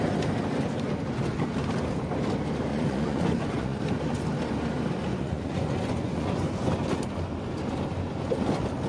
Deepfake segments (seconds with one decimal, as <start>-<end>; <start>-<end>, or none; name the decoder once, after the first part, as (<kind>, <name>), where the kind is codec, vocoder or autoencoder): 2.7-3.8 (vocoder, Vocos); 5.1-6.7